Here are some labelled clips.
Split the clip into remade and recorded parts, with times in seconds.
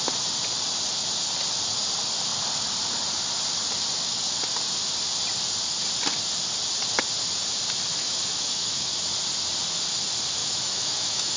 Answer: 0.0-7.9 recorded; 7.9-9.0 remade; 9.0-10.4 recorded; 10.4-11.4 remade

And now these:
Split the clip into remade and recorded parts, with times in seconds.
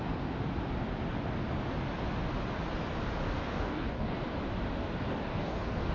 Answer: 0.0-3.4 recorded; 3.4-4.2 remade; 4.2-5.1 recorded; 5.1-5.9 remade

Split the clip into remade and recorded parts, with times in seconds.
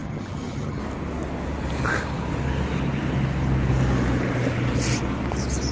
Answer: 0.0-0.8 remade; 0.8-5.7 recorded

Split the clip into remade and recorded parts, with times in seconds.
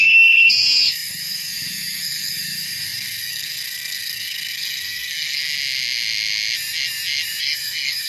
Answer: 0.0-5.4 remade; 5.4-7.4 recorded; 7.4-8.1 remade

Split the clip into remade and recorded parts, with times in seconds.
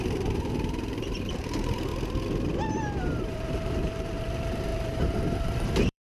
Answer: 0.0-1.9 remade; 1.9-2.6 recorded; 2.6-6.1 remade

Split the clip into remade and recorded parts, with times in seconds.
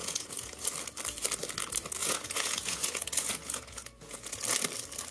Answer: 0.0-0.7 remade; 0.7-2.0 recorded; 2.0-4.4 remade; 4.4-5.1 recorded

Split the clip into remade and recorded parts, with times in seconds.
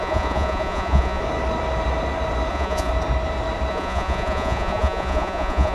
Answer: 0.0-1.2 remade; 1.2-2.5 recorded; 2.5-2.9 remade; 2.9-3.7 recorded; 3.7-5.7 remade